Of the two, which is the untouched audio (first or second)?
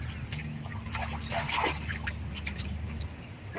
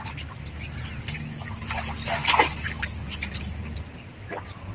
second